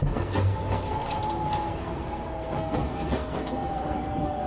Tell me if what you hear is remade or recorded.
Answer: remade